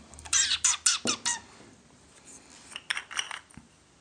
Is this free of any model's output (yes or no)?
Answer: yes